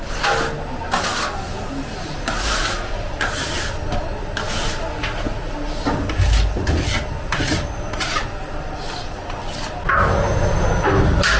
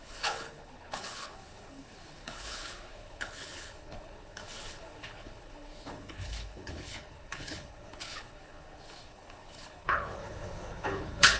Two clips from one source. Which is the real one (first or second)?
first